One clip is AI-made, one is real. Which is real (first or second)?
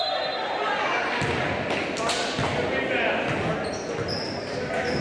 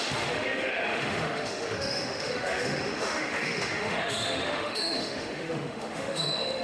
first